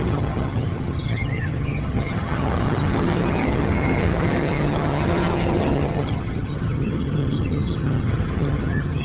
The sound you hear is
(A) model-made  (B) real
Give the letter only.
A